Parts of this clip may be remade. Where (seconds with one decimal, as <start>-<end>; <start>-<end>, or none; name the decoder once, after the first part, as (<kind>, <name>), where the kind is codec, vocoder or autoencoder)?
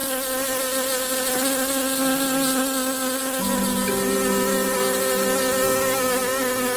none